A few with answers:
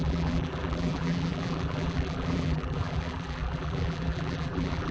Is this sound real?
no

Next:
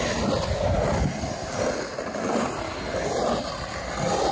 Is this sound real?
yes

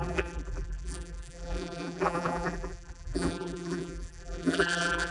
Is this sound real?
no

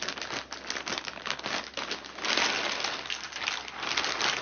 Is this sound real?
yes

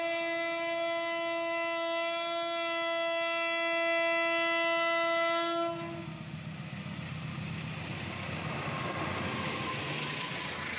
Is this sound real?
yes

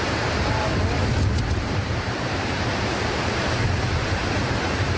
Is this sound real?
no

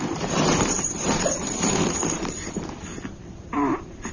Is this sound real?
no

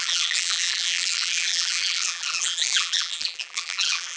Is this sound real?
no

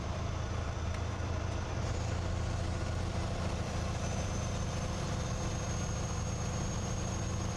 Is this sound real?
no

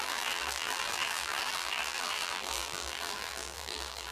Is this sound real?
no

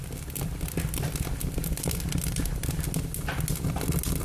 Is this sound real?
yes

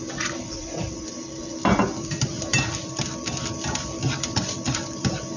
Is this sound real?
no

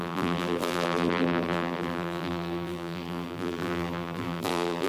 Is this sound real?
no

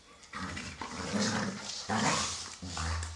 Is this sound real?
yes